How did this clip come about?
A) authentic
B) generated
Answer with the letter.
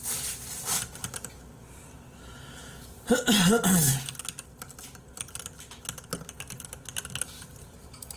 A